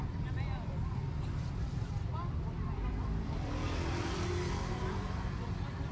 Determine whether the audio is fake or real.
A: fake